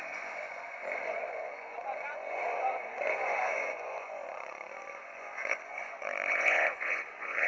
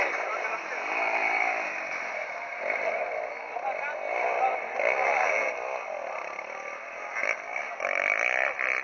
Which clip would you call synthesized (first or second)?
first